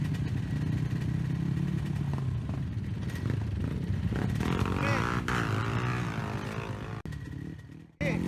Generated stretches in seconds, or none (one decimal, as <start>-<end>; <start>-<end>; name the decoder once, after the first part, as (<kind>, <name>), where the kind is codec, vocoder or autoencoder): none